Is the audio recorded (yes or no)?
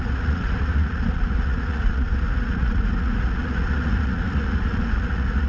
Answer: no